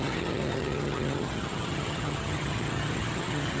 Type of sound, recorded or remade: remade